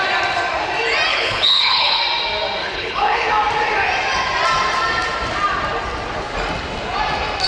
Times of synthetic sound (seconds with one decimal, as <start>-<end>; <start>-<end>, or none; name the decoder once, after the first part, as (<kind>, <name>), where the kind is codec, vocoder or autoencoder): 1.1-2.0 (codec, HILCodec); 2.6-3.3